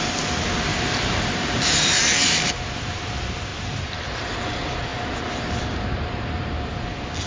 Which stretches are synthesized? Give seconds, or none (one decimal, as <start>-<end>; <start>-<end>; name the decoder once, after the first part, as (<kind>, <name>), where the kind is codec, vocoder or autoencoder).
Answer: 0.7-3.0 (vocoder, BigVGAN v2); 3.5-4.4; 4.9-6.7